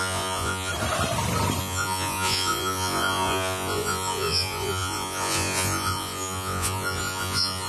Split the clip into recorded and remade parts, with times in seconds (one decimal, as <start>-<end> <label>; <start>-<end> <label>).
0.0-0.7 remade; 0.7-1.6 recorded; 1.6-7.7 remade